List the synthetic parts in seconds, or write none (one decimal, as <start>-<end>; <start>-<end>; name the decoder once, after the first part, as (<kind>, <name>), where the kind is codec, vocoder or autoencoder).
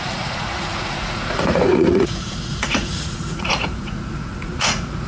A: 0.0-5.1 (vocoder, Vocos)